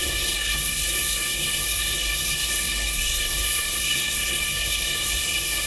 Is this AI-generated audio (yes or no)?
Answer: yes